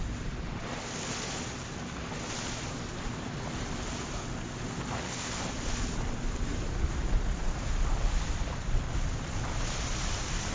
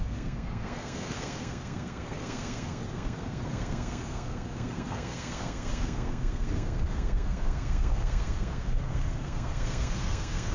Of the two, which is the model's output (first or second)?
second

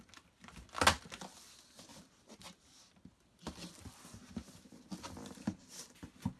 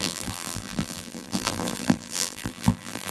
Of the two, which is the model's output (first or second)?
second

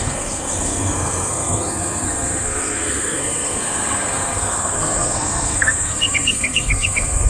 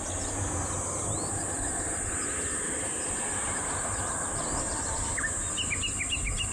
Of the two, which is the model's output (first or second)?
first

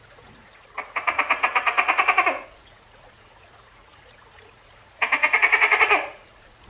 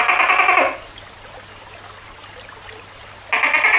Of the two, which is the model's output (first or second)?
first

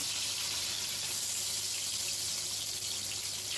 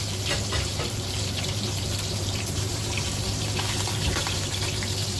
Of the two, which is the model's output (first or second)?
second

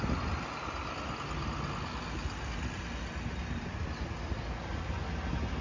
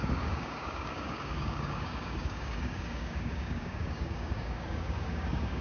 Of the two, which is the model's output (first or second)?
second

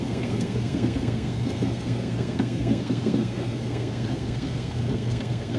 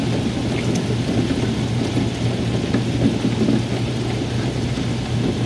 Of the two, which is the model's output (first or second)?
first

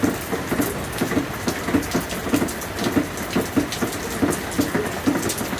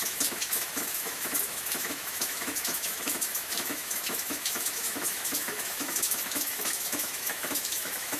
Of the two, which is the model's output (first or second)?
second